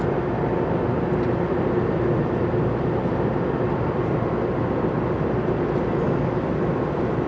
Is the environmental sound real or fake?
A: real